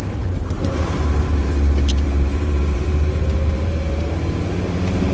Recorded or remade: remade